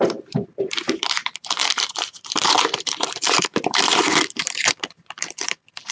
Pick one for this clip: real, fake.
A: fake